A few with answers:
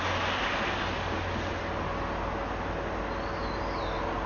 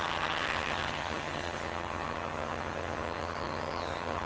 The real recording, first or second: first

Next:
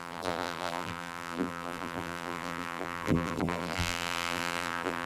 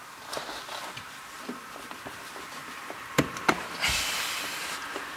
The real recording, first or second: second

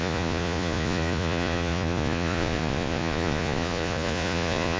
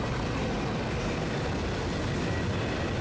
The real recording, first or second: second